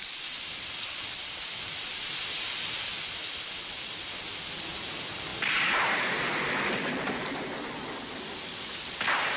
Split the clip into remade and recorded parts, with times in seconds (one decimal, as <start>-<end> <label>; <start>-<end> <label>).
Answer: 0.0-0.9 remade; 0.9-5.3 recorded; 5.3-6.1 remade; 6.1-9.4 recorded